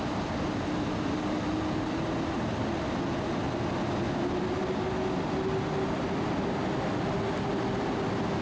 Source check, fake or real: real